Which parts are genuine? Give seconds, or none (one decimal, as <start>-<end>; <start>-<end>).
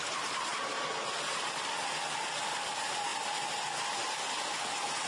0.0-0.5; 1.9-5.1